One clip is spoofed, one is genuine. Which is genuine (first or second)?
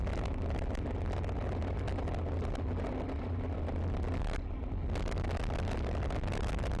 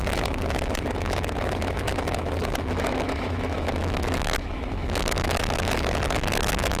first